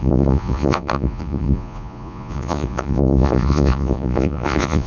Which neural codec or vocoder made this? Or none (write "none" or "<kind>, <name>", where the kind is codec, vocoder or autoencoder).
vocoder, Vocos